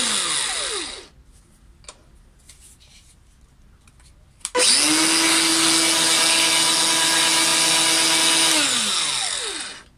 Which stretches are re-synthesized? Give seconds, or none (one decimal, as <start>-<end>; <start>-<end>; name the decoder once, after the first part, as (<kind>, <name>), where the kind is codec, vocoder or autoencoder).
none